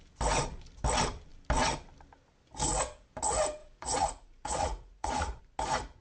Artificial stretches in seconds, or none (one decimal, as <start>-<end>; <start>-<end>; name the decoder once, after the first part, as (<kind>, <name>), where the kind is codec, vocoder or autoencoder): 3.6-5.4 (vocoder, Vocos)